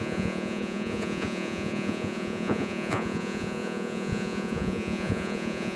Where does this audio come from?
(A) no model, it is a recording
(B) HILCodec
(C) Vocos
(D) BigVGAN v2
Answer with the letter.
C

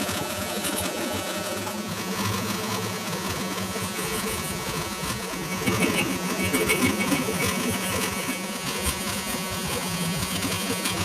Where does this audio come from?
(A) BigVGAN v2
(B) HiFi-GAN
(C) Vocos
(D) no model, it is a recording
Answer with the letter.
C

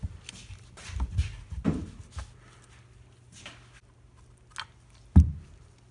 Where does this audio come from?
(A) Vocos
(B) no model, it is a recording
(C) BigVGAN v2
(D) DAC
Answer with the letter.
B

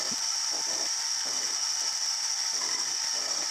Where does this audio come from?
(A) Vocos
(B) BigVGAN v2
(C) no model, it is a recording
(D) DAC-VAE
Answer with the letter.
C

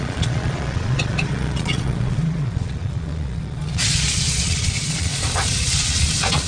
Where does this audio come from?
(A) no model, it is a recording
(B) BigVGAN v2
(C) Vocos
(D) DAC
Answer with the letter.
C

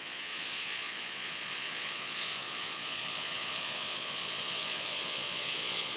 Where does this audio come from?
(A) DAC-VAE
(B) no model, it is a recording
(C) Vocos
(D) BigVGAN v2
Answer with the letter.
C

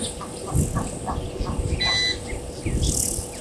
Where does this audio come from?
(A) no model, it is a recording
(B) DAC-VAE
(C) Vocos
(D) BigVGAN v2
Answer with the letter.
A